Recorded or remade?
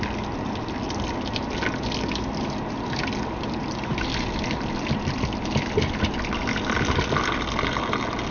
recorded